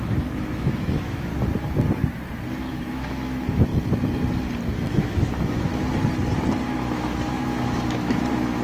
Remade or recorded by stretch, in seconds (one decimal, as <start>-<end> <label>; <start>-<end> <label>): 0.0-1.3 remade; 1.3-2.7 recorded; 2.7-3.7 remade; 3.7-5.0 recorded; 5.0-5.7 remade; 5.7-6.7 recorded; 6.7-8.6 remade